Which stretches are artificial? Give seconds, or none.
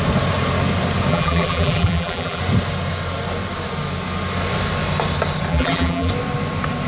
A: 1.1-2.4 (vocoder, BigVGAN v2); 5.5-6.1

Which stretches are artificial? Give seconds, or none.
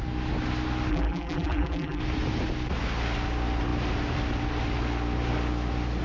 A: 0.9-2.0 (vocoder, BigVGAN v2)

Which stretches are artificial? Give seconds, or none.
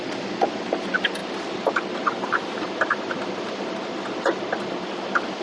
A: 1.2-4.4 (vocoder, BigVGAN v2)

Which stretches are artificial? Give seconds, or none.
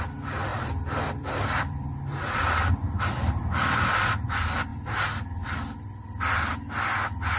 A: 0.5-3.3 (vocoder, BigVGAN v2); 4.7-6.3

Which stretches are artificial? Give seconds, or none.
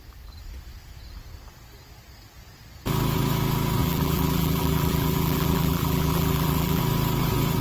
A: 3.8-6.8 (vocoder, BigVGAN v2)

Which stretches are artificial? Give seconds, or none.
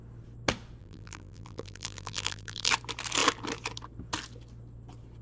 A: 0.8-2.7 (vocoder, BigVGAN v2)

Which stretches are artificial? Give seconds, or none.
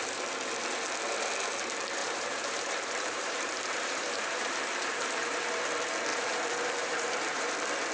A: 2.0-5.5 (vocoder, BigVGAN v2); 6.1-7.5